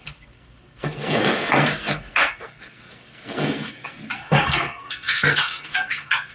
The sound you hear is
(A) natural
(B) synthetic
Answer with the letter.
B